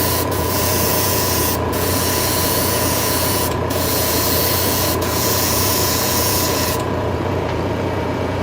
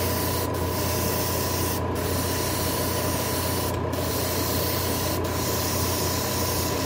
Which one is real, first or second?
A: second